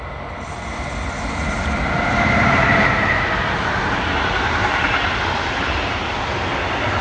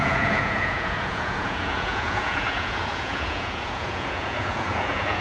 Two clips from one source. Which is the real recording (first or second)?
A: first